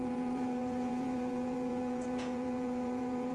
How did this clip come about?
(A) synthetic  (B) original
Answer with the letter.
A